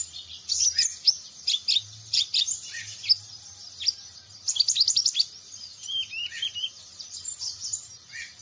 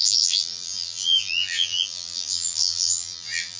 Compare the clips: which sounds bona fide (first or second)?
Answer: first